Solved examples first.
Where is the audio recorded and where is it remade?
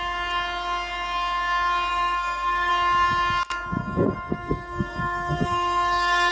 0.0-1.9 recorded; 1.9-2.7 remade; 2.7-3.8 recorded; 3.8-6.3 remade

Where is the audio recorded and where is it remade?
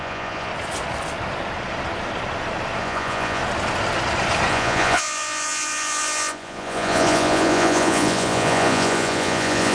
0.0-0.5 remade; 0.5-2.8 recorded; 2.8-3.4 remade; 3.4-4.5 recorded; 4.5-9.7 remade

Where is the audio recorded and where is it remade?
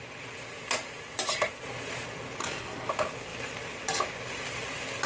0.0-2.4 recorded; 2.4-2.9 remade; 2.9-5.1 recorded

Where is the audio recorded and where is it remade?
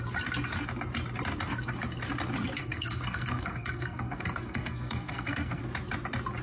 0.0-2.6 recorded; 2.6-5.6 remade; 5.6-6.4 recorded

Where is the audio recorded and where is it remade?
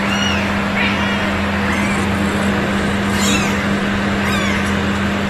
0.0-5.3 recorded